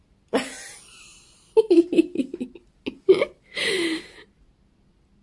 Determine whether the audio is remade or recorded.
recorded